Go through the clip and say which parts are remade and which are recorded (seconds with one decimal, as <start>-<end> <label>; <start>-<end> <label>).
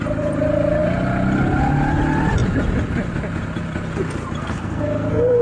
0.0-4.4 recorded; 4.4-5.4 remade